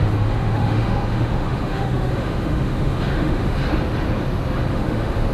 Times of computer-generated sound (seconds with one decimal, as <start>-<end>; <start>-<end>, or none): 0.0-3.6; 4.7-5.3